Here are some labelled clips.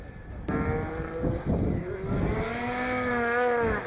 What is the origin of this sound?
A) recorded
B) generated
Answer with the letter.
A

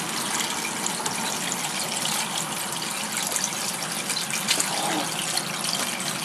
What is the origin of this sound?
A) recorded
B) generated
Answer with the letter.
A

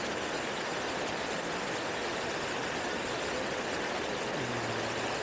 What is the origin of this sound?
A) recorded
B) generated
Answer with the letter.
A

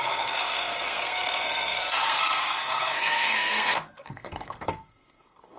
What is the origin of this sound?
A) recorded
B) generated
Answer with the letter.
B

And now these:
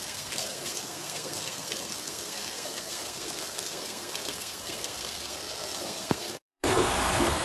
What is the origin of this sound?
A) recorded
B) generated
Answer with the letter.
B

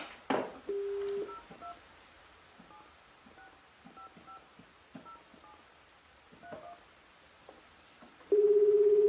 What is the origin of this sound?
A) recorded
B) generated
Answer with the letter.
A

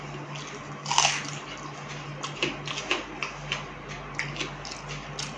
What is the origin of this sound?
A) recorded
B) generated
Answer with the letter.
A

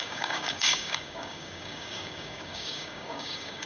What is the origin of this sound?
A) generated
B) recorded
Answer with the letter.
A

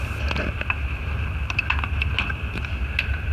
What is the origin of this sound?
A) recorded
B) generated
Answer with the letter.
A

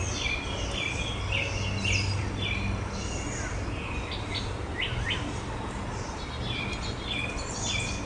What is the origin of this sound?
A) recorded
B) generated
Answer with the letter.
A